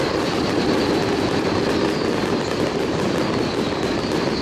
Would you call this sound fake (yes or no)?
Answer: yes